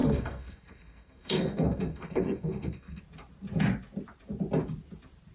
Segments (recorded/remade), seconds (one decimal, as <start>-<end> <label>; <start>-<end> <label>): 0.0-3.0 remade; 3.0-5.3 recorded